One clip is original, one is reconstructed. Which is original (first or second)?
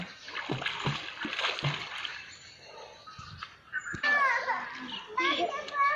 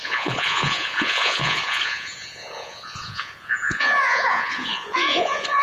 first